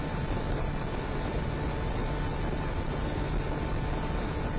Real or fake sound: real